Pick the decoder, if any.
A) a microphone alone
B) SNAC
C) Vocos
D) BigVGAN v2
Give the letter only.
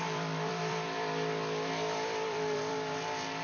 D